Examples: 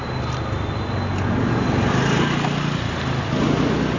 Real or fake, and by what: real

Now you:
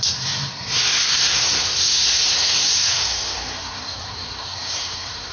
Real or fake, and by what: fake, codec, SNAC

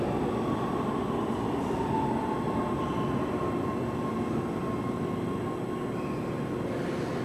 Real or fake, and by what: real